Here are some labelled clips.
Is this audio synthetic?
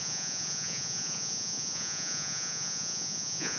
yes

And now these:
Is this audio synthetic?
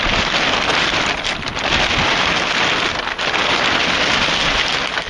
no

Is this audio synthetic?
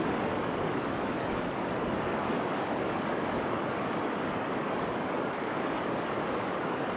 yes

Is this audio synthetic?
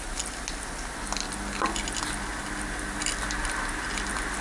no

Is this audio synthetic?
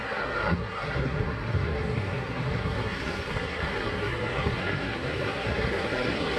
yes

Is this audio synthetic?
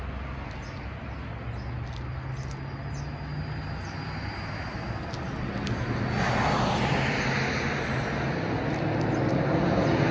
no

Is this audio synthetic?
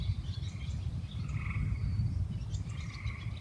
yes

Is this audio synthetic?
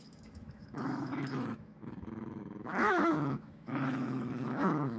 yes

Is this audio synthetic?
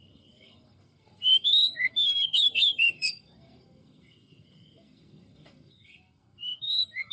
yes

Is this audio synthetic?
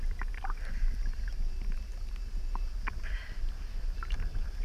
no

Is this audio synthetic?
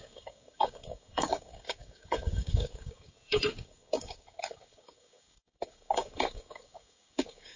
yes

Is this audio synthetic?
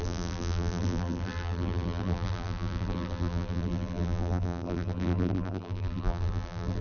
yes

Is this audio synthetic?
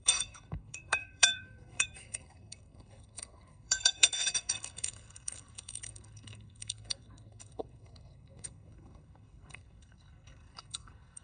yes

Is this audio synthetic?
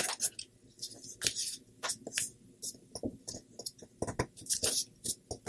no